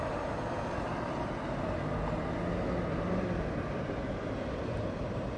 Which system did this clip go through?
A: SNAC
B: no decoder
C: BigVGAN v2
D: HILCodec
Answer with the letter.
B